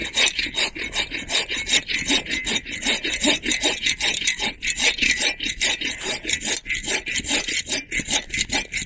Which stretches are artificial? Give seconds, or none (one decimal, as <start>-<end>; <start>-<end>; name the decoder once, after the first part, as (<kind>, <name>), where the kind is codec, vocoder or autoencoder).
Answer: 0.0-1.0 (vocoder, BigVGAN v2)